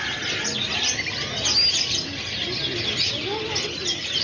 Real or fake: real